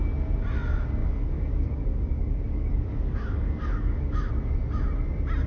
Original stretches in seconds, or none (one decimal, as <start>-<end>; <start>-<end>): 0.0-1.0; 4.3-5.5